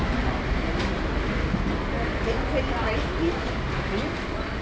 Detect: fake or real real